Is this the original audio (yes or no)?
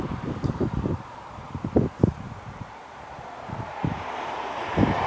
no